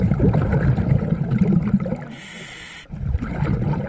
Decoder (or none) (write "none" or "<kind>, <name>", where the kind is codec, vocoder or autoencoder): none